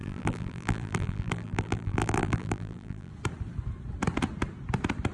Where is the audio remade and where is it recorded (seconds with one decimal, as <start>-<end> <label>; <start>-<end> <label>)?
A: 0.0-3.1 remade; 3.1-5.1 recorded